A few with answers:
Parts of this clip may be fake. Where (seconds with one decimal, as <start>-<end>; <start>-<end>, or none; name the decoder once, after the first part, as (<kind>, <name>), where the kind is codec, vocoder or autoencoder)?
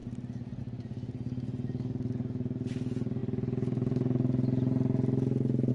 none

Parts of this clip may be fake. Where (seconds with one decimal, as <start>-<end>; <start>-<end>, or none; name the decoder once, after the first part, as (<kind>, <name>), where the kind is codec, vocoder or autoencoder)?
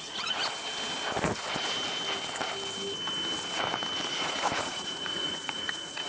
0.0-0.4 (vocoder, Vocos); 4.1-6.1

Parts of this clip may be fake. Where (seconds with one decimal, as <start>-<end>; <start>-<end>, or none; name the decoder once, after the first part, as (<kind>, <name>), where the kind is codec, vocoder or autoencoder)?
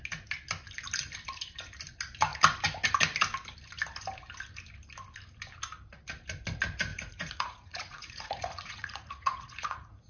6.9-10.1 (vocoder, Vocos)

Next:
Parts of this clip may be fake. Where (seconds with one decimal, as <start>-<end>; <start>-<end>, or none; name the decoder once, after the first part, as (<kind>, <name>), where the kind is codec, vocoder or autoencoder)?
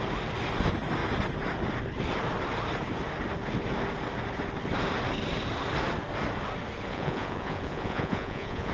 6.9-8.7 (vocoder, Vocos)